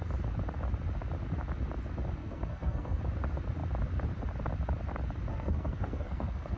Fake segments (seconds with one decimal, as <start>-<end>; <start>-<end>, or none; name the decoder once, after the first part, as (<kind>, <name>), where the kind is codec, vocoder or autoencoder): 2.2-3.0 (codec, SNAC); 5.3-6.6